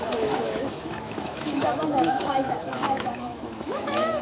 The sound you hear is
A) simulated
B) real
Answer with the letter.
A